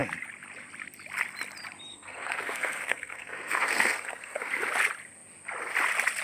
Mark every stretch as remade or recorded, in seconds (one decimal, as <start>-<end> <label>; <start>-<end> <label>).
0.0-1.9 recorded; 1.9-4.5 remade; 4.5-6.2 recorded